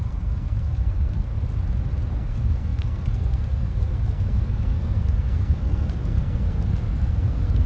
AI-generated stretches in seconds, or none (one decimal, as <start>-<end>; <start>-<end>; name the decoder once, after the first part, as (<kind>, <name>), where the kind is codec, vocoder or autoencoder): 0.0-1.3 (codec, SNAC); 2.1-7.7